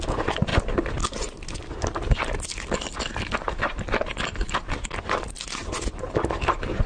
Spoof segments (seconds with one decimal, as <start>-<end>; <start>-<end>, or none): none